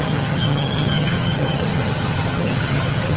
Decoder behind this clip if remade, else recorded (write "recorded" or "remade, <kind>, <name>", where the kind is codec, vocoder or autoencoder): remade, vocoder, HiFi-GAN